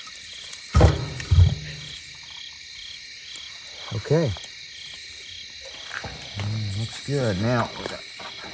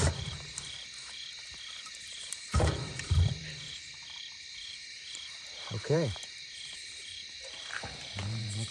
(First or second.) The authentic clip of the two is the first